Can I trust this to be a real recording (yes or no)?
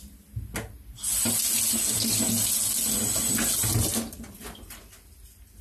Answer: yes